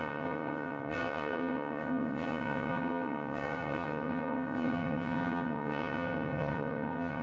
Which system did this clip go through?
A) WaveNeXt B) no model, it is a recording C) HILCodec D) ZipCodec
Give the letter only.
A